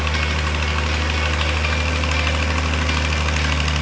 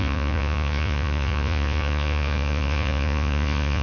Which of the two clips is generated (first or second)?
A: second